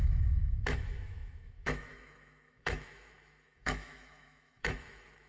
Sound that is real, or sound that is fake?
fake